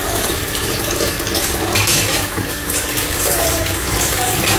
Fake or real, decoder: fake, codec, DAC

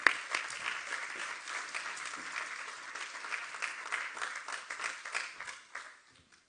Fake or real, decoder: real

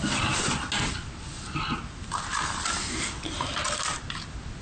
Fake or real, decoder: real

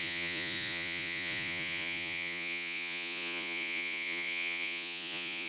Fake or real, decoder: fake, vocoder, Vocos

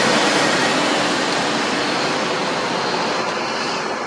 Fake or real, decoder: real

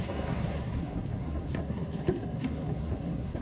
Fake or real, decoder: fake, codec, SNAC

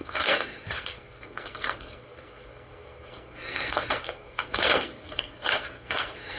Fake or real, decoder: fake, codec, SNAC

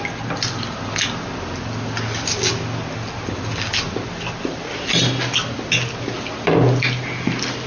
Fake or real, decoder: real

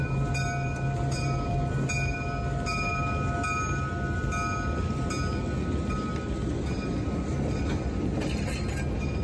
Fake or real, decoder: real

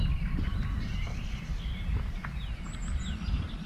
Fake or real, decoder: real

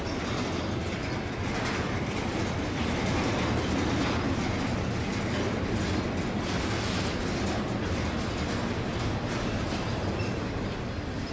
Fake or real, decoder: real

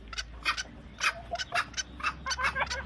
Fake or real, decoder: real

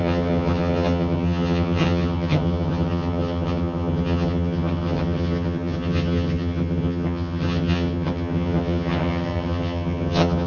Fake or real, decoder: fake, vocoder, HiFi-GAN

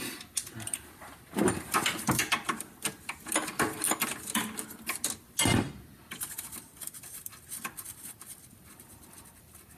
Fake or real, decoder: real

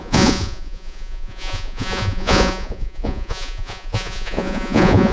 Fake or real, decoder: fake, vocoder, Vocos